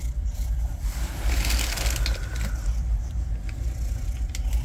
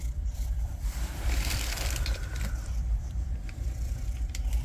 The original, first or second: first